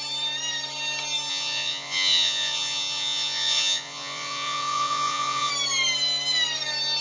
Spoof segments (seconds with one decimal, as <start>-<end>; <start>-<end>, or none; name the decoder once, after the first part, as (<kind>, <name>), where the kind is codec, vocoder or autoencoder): 1.3-5.5 (vocoder, Vocos)